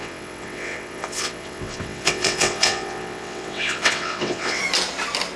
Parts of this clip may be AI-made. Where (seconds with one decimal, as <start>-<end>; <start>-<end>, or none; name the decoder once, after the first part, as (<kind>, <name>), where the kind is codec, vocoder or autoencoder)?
0.0-4.6 (vocoder, WaveNeXt)